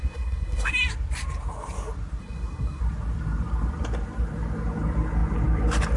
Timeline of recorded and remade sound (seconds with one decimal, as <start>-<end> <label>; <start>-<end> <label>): 0.0-0.7 remade; 0.7-2.2 recorded; 2.2-2.8 remade; 2.8-6.0 recorded